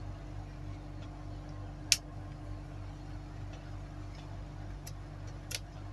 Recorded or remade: recorded